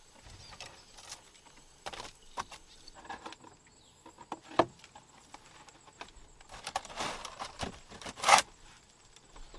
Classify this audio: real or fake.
real